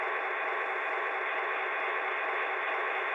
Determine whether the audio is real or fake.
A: real